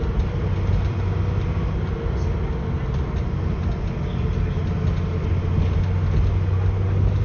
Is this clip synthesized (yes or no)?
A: no